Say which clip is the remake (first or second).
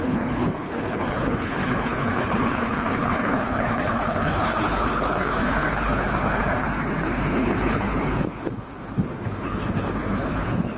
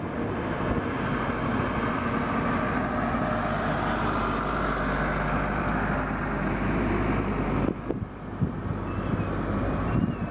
first